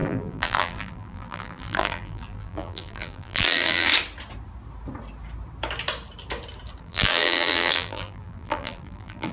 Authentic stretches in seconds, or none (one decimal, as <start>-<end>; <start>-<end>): 3.9-6.8